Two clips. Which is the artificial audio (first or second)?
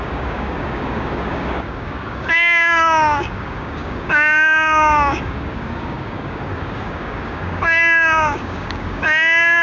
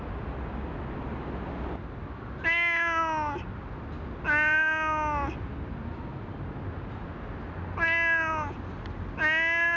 first